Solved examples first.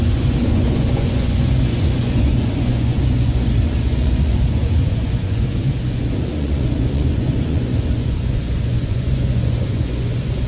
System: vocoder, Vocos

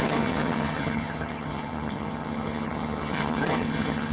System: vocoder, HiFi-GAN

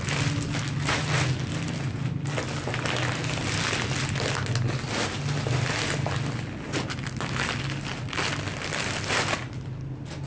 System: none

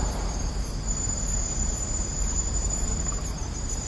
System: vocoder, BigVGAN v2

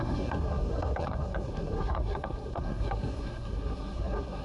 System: codec, SNAC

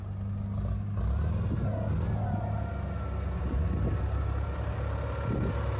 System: none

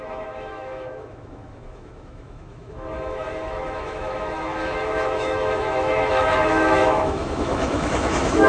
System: autoencoder, DAC-VAE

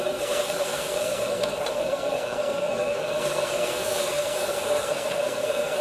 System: codec, SNAC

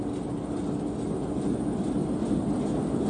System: none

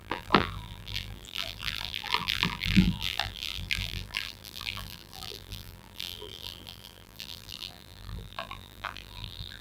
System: vocoder, BigVGAN v2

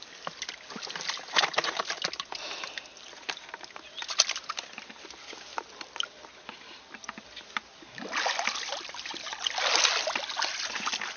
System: none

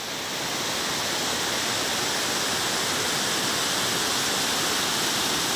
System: none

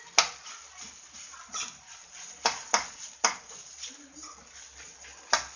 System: none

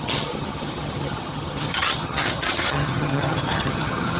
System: vocoder, HiFi-GAN